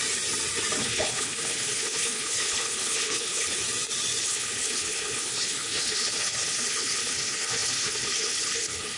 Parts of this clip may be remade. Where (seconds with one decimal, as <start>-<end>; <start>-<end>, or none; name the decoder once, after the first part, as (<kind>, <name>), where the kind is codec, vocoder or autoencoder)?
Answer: 0.8-3.6 (codec, HILCodec); 4.2-9.0

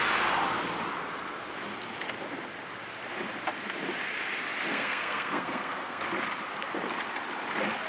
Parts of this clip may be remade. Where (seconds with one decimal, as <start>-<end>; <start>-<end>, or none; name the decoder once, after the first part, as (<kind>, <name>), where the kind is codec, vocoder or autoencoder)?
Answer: 4.7-6.0 (codec, SNAC)

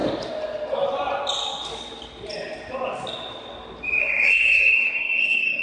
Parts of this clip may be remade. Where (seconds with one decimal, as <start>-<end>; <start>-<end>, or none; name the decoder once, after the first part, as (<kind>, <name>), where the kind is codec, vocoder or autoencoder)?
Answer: 4.0-5.6 (codec, SNAC)

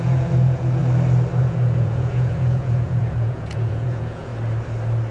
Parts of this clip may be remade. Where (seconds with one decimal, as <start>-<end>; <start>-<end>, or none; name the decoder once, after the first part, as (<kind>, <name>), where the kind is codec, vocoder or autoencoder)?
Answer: 0.0-0.8 (vocoder, Vocos); 1.4-4.3

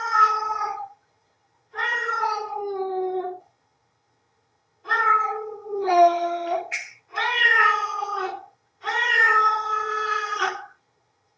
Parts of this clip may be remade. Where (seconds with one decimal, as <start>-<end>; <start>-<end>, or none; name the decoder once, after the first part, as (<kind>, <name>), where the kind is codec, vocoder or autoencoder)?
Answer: 0.0-2.6 (vocoder, HiFi-GAN); 3.4-11.4